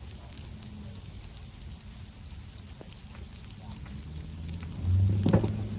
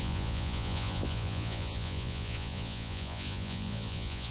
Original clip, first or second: first